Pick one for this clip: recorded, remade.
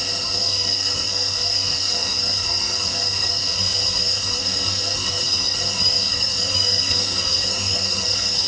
remade